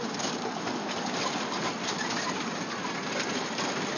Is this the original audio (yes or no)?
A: yes